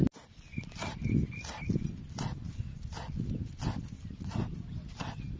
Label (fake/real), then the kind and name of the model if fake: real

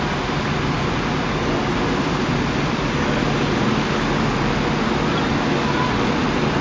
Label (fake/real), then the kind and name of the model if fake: real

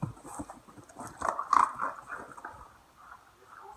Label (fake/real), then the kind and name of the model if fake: real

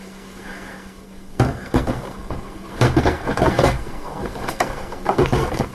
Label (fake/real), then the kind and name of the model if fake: fake, codec, SNAC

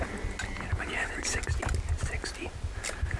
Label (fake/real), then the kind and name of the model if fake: real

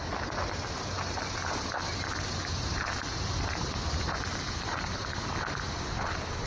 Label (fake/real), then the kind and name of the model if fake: real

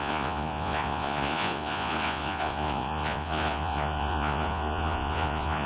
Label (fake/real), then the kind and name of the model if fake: fake, vocoder, Vocos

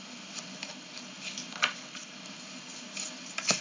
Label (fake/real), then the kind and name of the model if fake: real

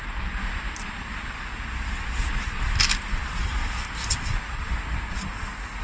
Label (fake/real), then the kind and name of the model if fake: real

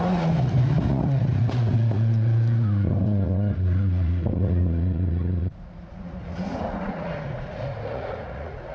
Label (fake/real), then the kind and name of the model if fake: fake, vocoder, Vocos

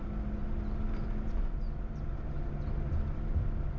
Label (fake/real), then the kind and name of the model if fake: real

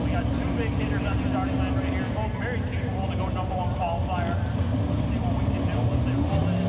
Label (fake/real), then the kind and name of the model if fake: real